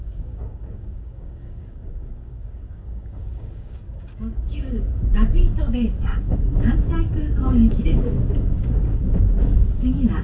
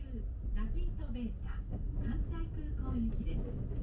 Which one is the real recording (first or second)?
second